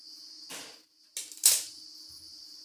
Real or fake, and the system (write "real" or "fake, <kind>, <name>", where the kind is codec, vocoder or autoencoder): real